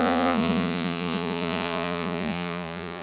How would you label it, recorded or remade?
remade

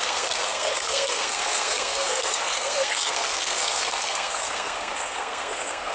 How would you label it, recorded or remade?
remade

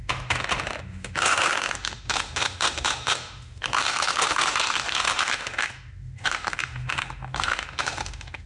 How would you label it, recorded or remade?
remade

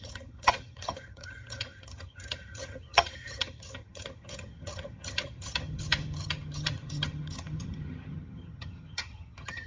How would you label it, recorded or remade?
remade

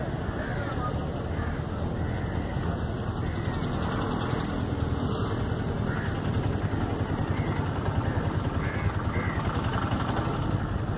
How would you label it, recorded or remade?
recorded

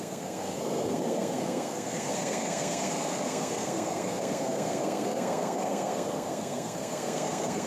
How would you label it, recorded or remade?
remade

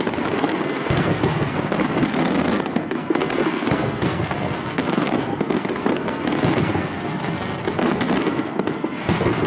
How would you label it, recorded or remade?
remade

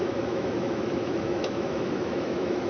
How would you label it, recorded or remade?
remade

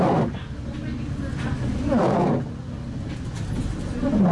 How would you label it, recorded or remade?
recorded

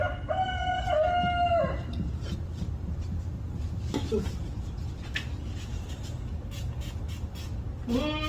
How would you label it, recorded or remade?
recorded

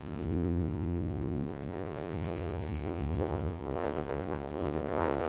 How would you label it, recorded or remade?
remade